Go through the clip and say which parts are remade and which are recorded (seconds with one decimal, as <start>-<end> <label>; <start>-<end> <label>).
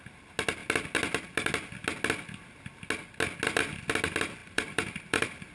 0.0-4.4 recorded; 4.4-5.5 remade